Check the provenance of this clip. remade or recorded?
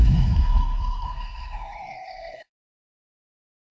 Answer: remade